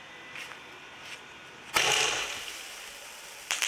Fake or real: fake